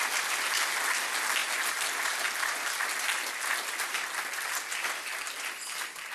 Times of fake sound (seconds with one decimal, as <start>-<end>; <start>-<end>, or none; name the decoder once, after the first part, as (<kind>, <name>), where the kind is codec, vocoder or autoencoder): none